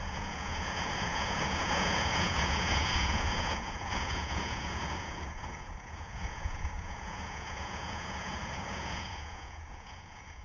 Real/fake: fake